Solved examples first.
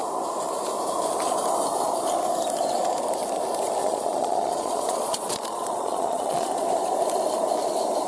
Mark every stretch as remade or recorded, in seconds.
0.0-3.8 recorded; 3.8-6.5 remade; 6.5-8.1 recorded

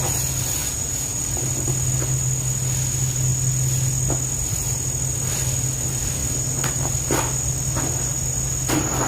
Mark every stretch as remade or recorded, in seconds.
0.0-0.6 recorded; 0.6-1.2 remade; 1.2-9.1 recorded

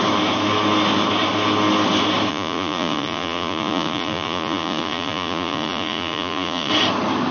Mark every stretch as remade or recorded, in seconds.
0.0-2.3 recorded; 2.3-6.7 remade; 6.7-7.3 recorded

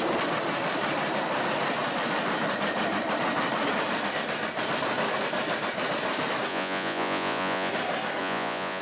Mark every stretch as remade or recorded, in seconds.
0.0-6.5 recorded; 6.5-7.7 remade; 7.7-8.2 recorded; 8.2-8.8 remade

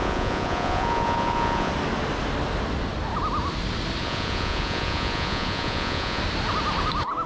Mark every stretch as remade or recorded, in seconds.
0.0-1.7 remade; 1.7-4.0 recorded; 4.0-6.2 remade; 6.2-7.3 recorded

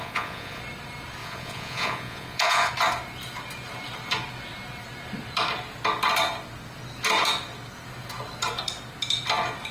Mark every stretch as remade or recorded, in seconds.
0.0-0.6 remade; 0.6-1.2 recorded; 1.2-2.7 remade; 2.7-9.7 recorded